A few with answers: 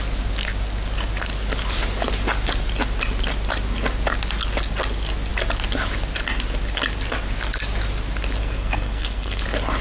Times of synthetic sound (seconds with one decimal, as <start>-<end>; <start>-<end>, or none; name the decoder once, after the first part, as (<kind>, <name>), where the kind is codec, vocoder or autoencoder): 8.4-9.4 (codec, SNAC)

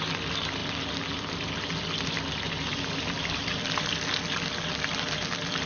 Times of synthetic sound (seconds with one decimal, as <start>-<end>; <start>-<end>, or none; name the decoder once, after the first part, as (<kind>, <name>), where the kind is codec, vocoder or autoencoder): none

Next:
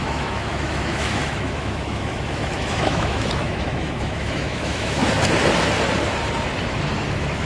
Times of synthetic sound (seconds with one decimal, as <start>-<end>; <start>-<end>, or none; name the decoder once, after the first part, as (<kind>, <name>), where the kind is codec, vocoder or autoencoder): 0.0-5.0 (autoencoder, DAC-VAE); 7.1-7.5

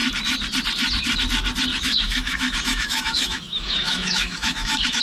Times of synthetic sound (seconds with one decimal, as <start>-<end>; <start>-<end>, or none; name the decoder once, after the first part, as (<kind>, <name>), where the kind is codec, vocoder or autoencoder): 1.7-5.0 (autoencoder, DAC-VAE)

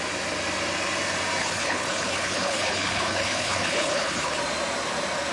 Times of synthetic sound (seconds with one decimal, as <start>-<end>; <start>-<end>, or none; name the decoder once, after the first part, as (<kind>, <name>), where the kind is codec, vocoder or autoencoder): 1.4-4.4 (codec, HILCodec)

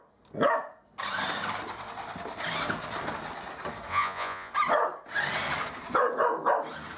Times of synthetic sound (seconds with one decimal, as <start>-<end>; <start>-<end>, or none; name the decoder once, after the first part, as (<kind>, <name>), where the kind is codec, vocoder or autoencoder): 3.9-4.5 (vocoder, Vocos)

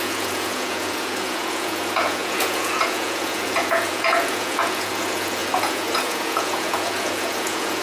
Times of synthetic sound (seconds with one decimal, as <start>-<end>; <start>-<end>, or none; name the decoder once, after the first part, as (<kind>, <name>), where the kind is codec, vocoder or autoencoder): 0.0-7.8 (vocoder, Vocos)